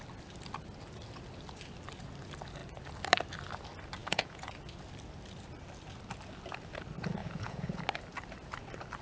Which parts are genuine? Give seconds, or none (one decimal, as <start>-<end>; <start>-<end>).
0.0-4.0; 4.5-7.2; 7.8-9.0